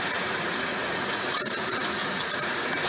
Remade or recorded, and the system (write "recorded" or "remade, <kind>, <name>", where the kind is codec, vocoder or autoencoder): remade, vocoder, Vocos